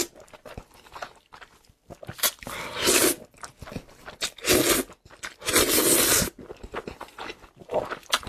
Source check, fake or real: real